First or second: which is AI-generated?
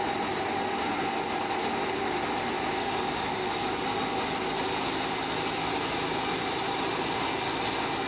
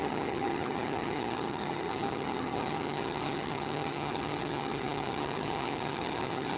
second